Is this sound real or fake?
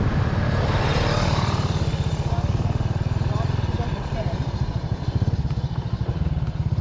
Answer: real